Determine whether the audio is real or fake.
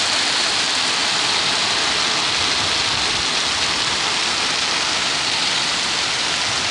real